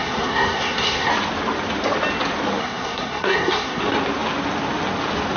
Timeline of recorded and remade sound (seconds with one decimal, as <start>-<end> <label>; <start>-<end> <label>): 0.0-1.1 remade; 1.1-2.6 recorded; 2.6-3.8 remade; 3.8-5.4 recorded